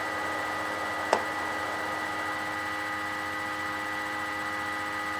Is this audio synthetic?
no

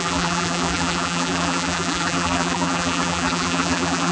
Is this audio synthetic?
yes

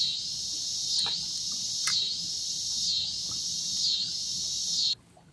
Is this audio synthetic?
yes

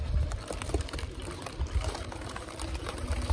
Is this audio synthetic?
yes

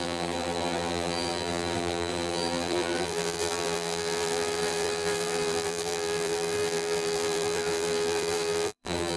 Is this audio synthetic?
yes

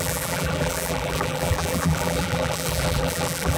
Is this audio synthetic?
yes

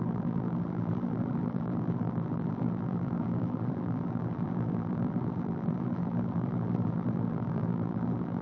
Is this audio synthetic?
yes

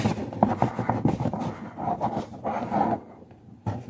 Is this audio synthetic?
no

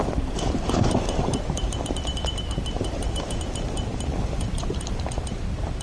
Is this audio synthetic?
yes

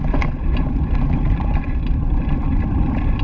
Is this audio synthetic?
yes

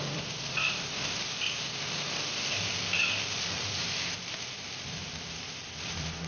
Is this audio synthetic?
yes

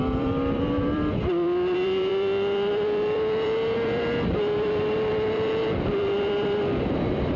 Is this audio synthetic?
yes